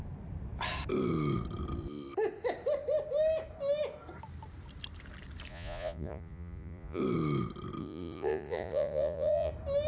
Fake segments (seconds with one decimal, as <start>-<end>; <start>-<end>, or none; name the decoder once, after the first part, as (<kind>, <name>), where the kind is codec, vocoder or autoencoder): 5.5-7.0 (vocoder, Vocos); 7.8-9.5